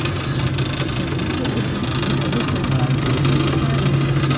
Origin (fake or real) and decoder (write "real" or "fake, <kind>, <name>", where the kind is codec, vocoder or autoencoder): real